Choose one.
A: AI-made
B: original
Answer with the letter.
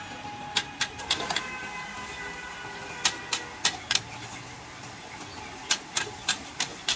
B